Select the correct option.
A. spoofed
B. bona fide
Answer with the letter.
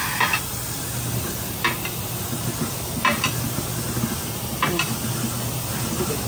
B